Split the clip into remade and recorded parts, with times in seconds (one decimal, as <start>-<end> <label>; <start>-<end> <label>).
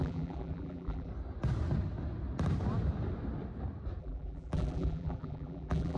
0.0-1.1 remade; 1.1-4.0 recorded; 4.0-6.0 remade